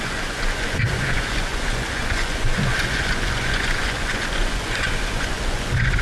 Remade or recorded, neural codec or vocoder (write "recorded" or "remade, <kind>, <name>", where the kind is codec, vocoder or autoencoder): remade, vocoder, Vocos